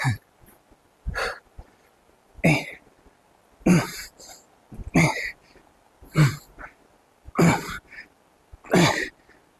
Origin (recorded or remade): recorded